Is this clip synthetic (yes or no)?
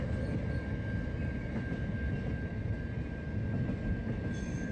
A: no